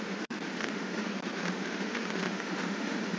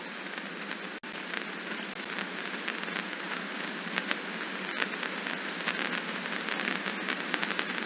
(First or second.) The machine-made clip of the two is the first